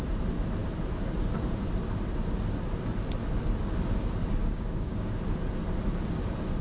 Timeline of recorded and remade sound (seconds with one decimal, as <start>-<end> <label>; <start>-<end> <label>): 0.0-4.4 recorded; 4.4-5.1 remade; 5.1-6.6 recorded